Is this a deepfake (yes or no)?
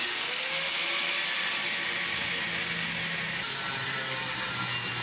no